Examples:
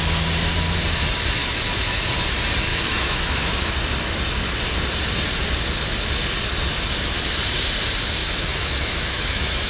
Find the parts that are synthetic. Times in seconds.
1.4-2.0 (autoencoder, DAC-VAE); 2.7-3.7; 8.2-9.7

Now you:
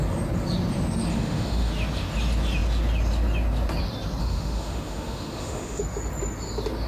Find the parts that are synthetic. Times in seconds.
1.1-1.7 (autoencoder, DAC-VAE); 4.2-5.8